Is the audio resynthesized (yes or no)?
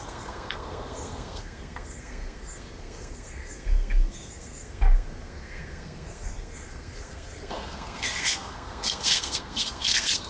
yes